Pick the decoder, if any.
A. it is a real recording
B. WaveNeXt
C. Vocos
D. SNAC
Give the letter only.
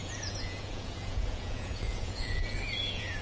C